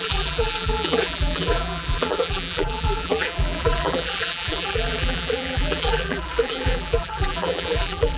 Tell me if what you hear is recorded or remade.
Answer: remade